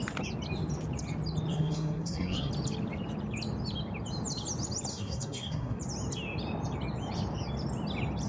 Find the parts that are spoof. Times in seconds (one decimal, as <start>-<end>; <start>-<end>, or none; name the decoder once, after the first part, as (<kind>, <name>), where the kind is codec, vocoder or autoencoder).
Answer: 1.5-2.5 (codec, SNAC); 4.9-5.8